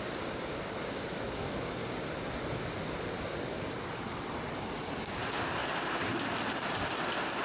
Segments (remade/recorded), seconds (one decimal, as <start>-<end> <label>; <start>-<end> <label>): 0.0-7.4 recorded